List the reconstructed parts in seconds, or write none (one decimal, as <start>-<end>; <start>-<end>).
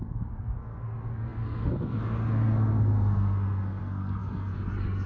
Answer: 0.0-5.1